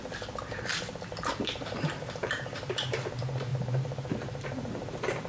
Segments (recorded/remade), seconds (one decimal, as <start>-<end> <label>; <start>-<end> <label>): 0.0-5.3 remade